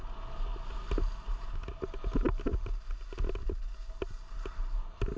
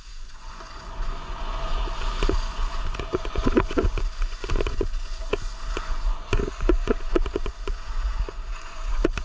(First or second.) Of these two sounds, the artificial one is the second